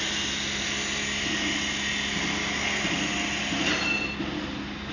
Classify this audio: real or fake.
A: real